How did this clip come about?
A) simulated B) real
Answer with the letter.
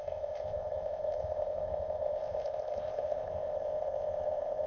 A